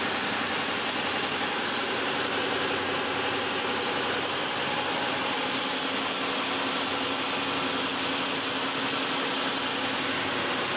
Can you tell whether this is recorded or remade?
recorded